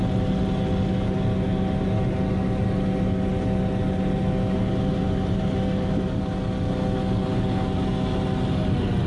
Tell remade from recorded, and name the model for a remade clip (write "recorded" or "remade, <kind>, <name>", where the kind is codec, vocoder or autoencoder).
recorded